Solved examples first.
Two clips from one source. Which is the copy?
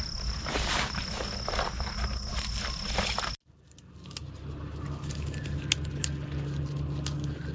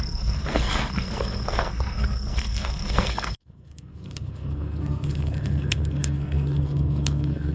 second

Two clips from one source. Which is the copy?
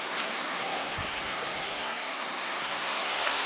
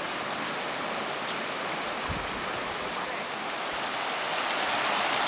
first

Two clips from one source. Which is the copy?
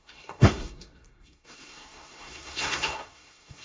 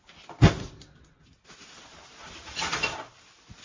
first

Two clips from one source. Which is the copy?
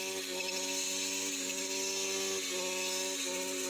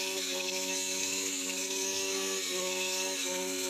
second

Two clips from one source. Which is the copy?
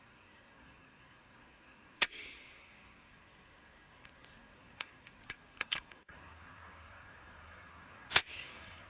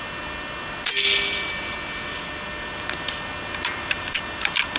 first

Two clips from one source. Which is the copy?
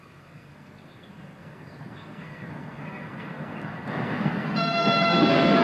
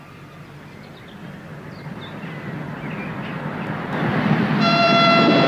first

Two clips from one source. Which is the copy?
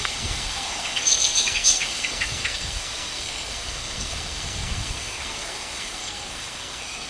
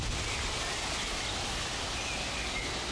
first